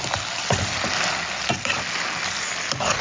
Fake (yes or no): no